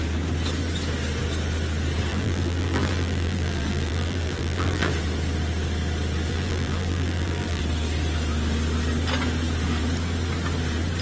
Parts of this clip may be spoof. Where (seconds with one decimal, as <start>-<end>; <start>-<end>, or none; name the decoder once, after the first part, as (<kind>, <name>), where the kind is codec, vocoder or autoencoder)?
2.1-4.9 (vocoder, BigVGAN v2); 6.3-7.6